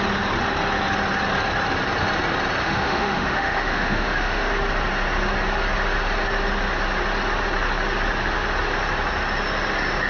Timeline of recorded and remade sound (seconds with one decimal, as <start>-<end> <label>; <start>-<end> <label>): 0.0-2.6 recorded; 2.6-4.5 remade; 4.5-10.1 recorded